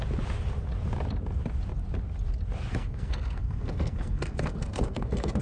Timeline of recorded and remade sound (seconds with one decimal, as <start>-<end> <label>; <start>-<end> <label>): 0.0-2.7 recorded; 2.7-5.4 remade